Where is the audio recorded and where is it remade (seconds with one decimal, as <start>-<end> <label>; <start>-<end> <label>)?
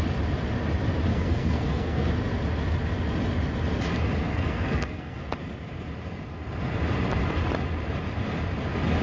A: 0.0-1.1 recorded; 1.1-2.1 remade; 2.1-4.2 recorded; 4.2-5.2 remade; 5.2-9.0 recorded